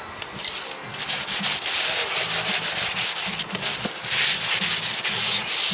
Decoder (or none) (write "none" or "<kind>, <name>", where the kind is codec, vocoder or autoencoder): none